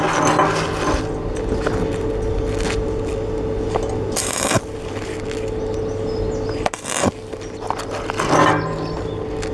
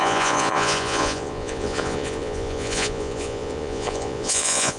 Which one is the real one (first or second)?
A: first